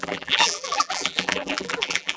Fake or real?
fake